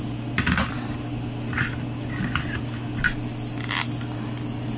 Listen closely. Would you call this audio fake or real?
real